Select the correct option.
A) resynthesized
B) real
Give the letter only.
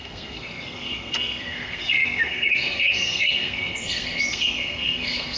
A